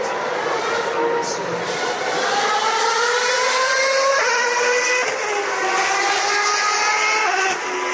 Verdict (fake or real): real